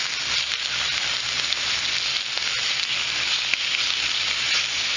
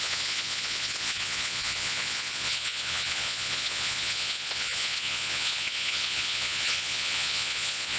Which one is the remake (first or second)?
second